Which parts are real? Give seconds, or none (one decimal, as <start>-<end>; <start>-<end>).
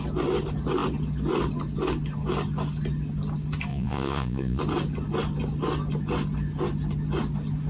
0.0-3.7; 4.6-7.7